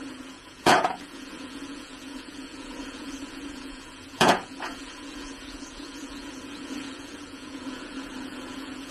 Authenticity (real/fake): fake